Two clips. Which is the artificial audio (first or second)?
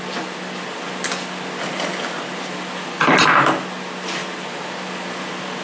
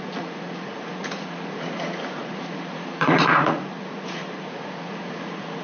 second